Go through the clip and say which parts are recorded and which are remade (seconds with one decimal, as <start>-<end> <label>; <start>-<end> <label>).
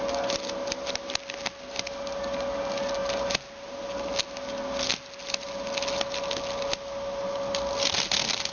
0.0-8.5 recorded